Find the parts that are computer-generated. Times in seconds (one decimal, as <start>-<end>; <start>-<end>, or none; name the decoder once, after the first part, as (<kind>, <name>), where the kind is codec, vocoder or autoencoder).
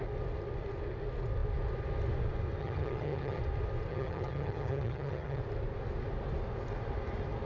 2.6-3.4 (vocoder, HiFi-GAN); 3.9-5.4